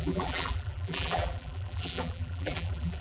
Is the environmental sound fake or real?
fake